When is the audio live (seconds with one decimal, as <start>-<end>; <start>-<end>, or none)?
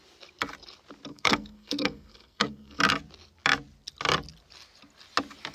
0.0-1.1; 2.8-5.5